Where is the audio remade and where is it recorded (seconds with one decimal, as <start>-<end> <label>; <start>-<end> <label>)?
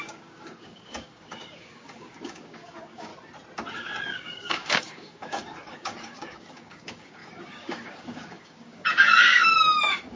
0.0-3.1 remade; 3.1-3.7 recorded; 3.7-10.2 remade